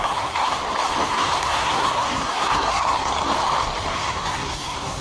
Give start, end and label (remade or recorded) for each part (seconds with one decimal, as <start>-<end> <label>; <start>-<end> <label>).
0.0-0.6 remade; 0.6-1.1 recorded; 1.1-3.1 remade; 3.1-3.9 recorded; 3.9-5.0 remade